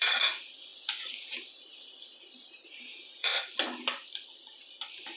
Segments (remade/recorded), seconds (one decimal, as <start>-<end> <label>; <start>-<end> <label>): 0.0-0.7 remade; 0.7-2.0 recorded; 2.0-3.3 remade; 3.3-5.2 recorded